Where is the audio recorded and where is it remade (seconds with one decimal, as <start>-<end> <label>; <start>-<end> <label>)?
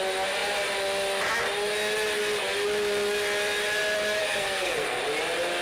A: 0.0-4.2 recorded; 4.2-5.0 remade; 5.0-5.6 recorded